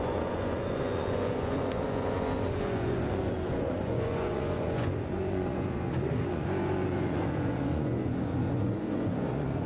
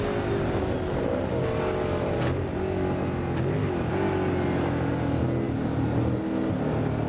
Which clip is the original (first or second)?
second